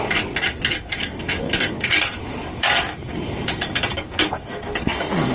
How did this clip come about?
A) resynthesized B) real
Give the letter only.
A